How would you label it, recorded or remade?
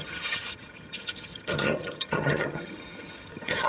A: remade